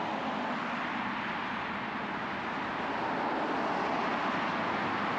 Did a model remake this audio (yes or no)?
no